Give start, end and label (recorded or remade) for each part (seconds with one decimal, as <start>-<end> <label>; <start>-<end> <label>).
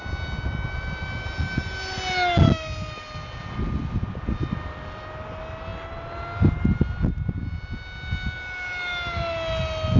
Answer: 0.0-10.0 recorded